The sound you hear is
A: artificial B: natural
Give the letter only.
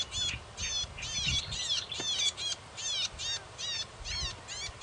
B